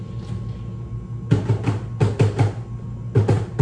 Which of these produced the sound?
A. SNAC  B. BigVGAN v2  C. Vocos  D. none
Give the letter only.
D